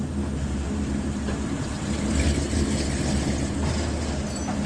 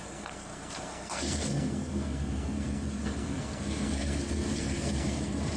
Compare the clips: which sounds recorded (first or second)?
first